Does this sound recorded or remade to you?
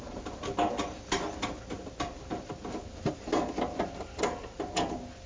recorded